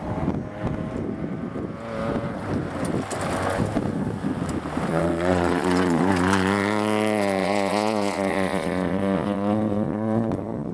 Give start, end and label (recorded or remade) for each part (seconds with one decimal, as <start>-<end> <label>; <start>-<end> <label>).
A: 0.0-4.9 recorded; 4.9-6.0 remade; 6.0-7.4 recorded; 7.4-10.7 remade